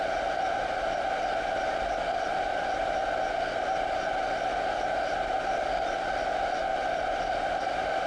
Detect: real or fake real